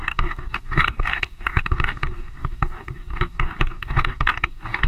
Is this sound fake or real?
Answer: fake